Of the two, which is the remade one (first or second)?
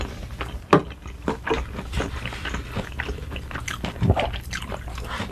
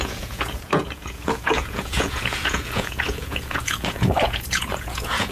second